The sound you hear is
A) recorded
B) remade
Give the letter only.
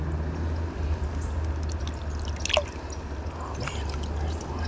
A